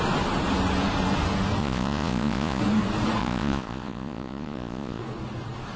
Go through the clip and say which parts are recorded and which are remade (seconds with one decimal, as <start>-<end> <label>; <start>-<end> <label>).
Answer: 0.0-1.6 recorded; 1.6-2.6 remade; 2.6-3.2 recorded; 3.2-5.0 remade; 5.0-5.8 recorded